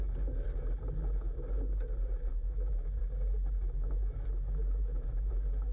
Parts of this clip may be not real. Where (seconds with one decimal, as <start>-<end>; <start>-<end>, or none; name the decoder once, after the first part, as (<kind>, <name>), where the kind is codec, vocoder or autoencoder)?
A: 2.3-3.0 (autoencoder, DAC-VAE); 3.6-5.3